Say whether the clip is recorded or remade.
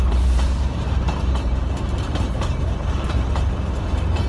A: remade